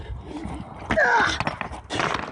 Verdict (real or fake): real